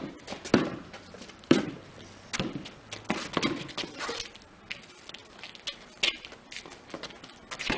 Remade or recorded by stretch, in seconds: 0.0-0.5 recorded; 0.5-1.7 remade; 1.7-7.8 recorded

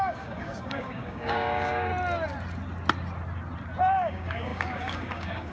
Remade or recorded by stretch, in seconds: 0.0-1.9 remade; 1.9-3.8 recorded; 3.8-5.5 remade

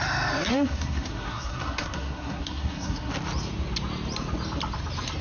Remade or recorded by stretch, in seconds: 0.0-0.5 recorded; 0.5-3.1 remade; 3.1-5.2 recorded

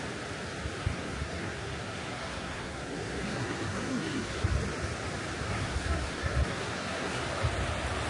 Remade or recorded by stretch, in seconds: 0.0-0.8 recorded; 0.8-4.5 remade; 4.5-5.5 recorded; 5.5-7.2 remade; 7.2-8.1 recorded

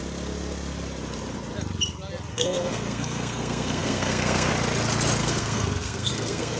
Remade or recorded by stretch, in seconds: 0.0-2.3 recorded; 2.3-4.5 remade; 4.5-5.2 recorded; 5.2-6.6 remade

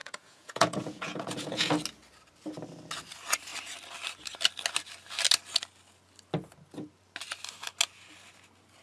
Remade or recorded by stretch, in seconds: 0.0-1.7 remade; 1.7-8.8 recorded

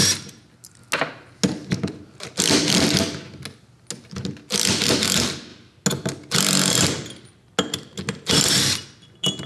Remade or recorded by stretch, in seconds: 0.0-9.5 recorded